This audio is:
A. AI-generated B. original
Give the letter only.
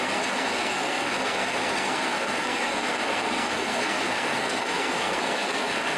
A